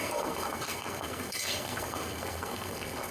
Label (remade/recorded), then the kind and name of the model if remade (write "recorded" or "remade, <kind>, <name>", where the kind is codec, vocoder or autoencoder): remade, codec, SNAC